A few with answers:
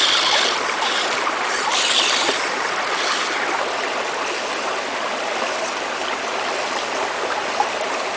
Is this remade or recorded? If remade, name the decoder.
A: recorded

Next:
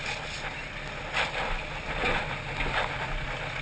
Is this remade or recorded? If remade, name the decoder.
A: recorded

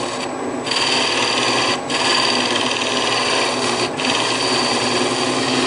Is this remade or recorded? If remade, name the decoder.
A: recorded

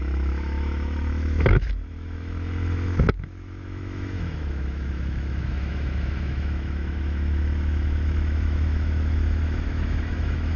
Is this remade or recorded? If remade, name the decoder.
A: remade, autoencoder, DAC-VAE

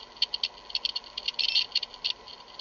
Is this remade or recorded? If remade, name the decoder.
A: recorded